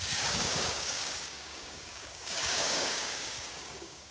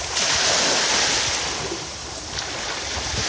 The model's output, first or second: first